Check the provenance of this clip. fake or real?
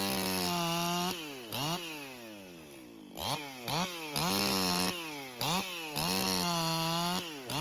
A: real